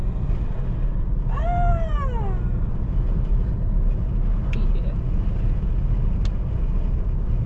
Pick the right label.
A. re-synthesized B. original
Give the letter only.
B